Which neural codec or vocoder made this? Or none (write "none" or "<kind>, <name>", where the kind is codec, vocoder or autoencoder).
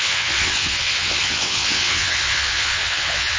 vocoder, WaveNeXt